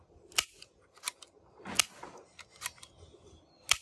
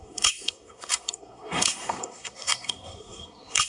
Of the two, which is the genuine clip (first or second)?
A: first